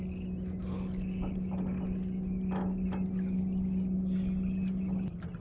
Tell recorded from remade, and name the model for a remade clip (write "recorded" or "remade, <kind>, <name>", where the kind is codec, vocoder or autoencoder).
recorded